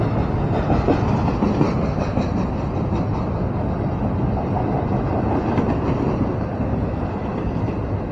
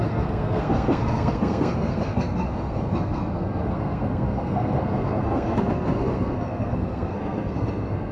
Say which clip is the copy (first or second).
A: second